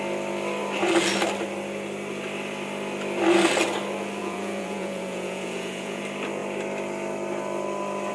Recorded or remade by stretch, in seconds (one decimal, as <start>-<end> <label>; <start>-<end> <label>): 0.0-4.2 recorded; 4.2-6.0 remade; 6.0-8.1 recorded